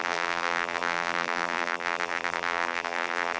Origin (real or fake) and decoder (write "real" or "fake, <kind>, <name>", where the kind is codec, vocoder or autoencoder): fake, vocoder, BigVGAN v2